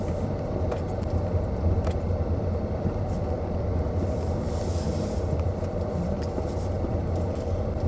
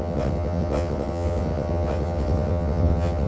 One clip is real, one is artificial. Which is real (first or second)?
first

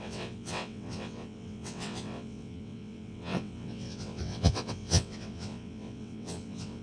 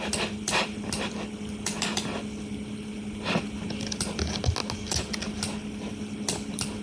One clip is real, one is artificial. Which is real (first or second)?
second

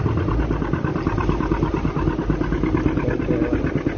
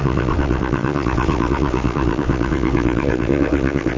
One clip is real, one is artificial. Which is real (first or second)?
first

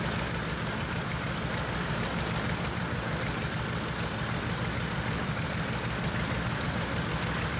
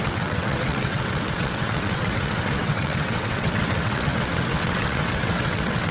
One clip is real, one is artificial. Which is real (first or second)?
first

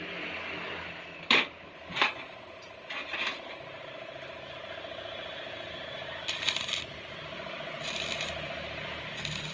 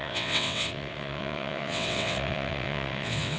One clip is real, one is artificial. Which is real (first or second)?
first